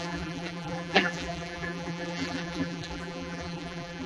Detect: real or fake fake